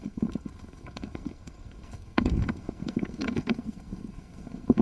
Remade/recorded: remade